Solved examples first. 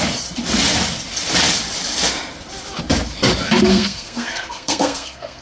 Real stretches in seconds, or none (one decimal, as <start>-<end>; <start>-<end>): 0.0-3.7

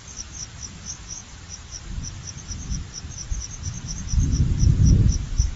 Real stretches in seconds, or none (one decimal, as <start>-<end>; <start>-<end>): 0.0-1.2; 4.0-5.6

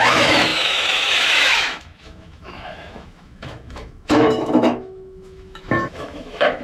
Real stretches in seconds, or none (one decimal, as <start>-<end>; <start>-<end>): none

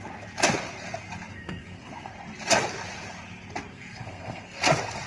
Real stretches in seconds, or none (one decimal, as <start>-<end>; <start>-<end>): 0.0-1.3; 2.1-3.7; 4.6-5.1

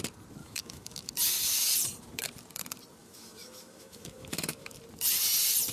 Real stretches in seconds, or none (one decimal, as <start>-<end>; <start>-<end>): 0.0-0.4; 1.1-3.0; 4.8-5.7

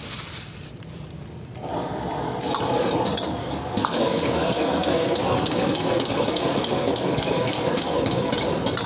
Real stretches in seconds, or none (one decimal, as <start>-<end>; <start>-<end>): 0.0-3.4; 8.3-8.9

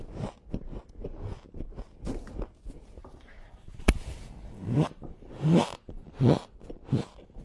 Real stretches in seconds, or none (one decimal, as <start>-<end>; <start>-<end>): 0.0-3.0; 6.1-7.4

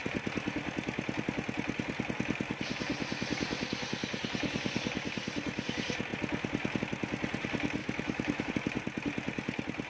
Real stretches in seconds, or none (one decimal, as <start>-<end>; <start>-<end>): 0.0-7.8; 8.5-9.9